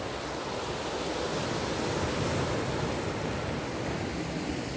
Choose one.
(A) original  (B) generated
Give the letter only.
A